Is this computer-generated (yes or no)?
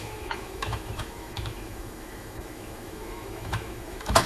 yes